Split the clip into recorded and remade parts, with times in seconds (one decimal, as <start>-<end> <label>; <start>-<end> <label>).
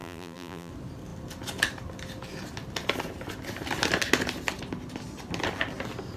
0.0-0.7 remade; 0.7-6.2 recorded